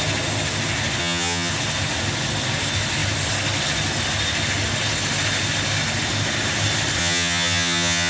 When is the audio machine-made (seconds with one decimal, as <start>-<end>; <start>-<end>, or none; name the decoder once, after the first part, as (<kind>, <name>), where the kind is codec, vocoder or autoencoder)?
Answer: 1.0-1.5 (vocoder, HiFi-GAN); 7.0-8.1

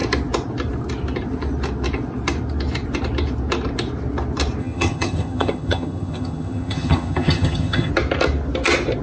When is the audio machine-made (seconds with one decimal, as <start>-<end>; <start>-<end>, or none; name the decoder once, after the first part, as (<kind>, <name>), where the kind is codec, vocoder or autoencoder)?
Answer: 4.6-7.9 (vocoder, HiFi-GAN)